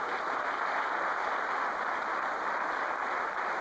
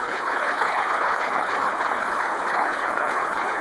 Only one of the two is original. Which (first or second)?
first